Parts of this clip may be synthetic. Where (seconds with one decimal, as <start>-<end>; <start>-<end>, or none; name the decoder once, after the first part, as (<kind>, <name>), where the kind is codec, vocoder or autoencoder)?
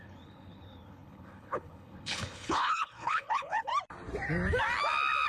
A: 0.0-3.7 (codec, HILCodec)